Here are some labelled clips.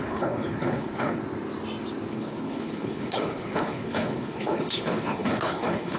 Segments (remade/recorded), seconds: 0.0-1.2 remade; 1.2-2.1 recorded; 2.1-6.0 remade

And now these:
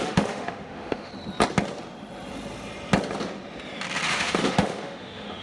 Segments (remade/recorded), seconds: 0.0-1.1 remade; 1.1-4.1 recorded; 4.1-5.4 remade